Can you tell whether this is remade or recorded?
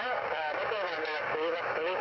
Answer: remade